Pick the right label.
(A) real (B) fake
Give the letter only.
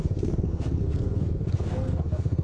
B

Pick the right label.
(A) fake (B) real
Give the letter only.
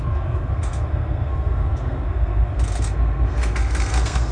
A